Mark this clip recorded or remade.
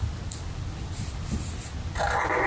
recorded